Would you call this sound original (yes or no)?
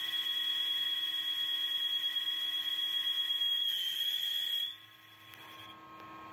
yes